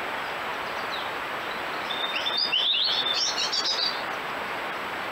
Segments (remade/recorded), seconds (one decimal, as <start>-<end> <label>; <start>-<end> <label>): 0.0-5.1 recorded